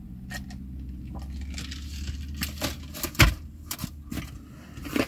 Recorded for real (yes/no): yes